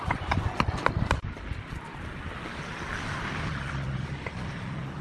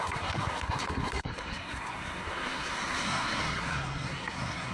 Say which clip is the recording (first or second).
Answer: first